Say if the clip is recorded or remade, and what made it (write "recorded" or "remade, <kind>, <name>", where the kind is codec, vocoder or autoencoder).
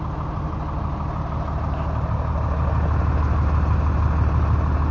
recorded